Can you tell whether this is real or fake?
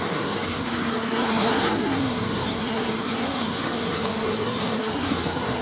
fake